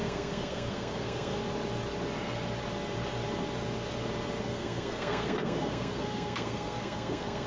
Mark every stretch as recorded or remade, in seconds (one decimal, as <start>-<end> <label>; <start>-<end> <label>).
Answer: 0.0-1.4 remade; 1.4-4.4 recorded; 4.4-7.5 remade